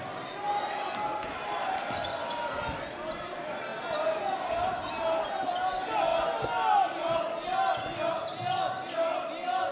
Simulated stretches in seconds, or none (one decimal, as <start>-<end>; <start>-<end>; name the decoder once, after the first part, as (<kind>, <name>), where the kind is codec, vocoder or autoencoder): none